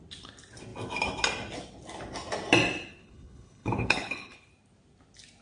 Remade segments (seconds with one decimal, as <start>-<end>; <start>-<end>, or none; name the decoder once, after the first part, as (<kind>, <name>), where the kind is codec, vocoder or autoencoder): 2.9-4.5 (codec, HILCodec)